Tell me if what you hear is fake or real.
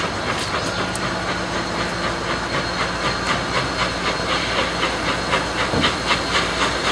real